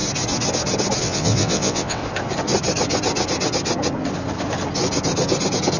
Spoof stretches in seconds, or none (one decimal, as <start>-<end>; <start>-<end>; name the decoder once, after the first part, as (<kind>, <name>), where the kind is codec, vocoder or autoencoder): 1.0-2.0 (vocoder, WaveNeXt)